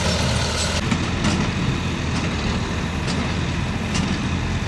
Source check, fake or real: real